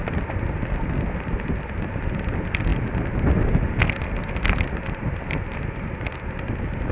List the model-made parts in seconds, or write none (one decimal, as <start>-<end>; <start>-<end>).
none